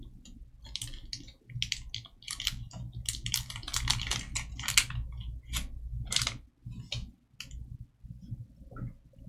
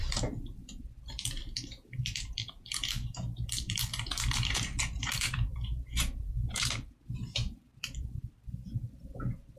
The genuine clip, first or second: first